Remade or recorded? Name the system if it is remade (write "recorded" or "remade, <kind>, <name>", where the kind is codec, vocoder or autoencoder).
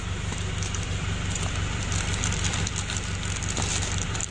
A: remade, vocoder, BigVGAN v2